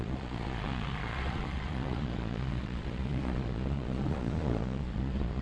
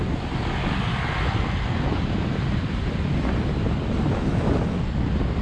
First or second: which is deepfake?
first